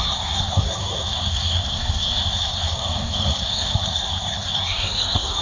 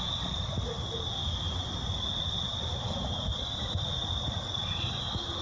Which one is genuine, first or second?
second